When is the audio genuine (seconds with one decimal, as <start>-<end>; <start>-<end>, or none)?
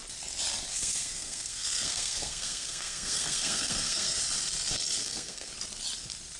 0.0-0.7; 4.2-5.0; 5.5-6.4